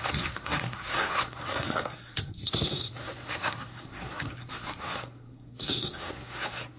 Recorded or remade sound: remade